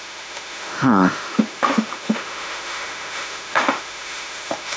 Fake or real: fake